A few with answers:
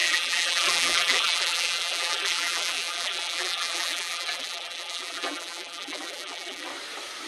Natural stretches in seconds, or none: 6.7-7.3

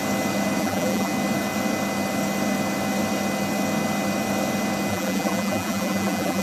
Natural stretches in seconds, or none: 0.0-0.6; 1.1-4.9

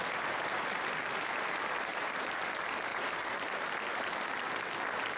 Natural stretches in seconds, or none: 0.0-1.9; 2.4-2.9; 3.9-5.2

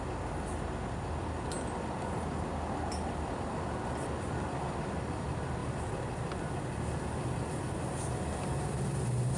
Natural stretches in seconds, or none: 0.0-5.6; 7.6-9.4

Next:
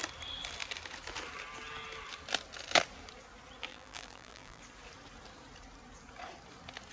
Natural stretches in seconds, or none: 0.0-3.7; 4.6-6.9